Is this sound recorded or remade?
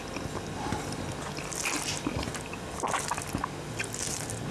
recorded